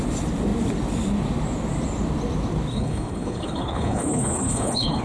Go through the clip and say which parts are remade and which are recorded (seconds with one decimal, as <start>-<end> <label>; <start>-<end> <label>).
0.0-2.7 recorded; 2.7-5.0 remade